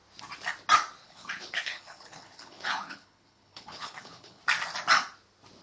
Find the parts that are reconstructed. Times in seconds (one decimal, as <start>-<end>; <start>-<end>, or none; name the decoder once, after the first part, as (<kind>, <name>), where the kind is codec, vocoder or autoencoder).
1.0-4.4 (codec, HILCodec)